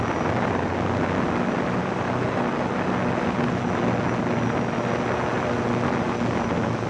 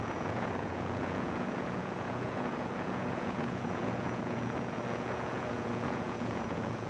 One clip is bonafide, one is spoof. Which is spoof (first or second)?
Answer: second